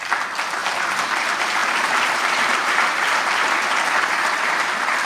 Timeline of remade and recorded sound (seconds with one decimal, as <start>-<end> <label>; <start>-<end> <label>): 0.0-5.1 remade